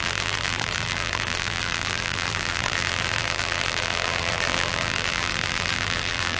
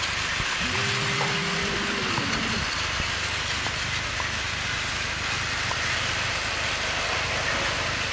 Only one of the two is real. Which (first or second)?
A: second